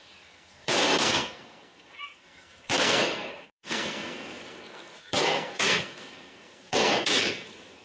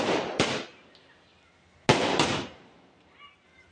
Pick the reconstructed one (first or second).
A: first